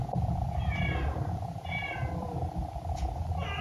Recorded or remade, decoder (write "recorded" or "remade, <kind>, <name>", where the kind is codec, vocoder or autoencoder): recorded